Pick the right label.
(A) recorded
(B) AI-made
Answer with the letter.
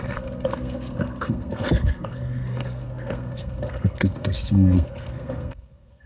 B